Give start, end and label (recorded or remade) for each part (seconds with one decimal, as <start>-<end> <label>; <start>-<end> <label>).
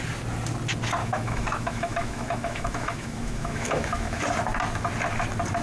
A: 0.0-1.0 recorded; 1.0-4.2 remade; 4.2-5.6 recorded